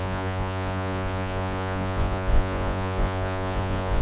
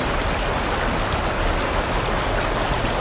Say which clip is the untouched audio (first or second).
second